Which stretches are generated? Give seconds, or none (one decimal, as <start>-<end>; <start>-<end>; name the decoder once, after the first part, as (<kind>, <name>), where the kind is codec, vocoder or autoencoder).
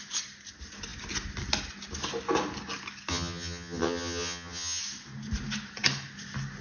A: 3.1-4.8 (vocoder, HiFi-GAN)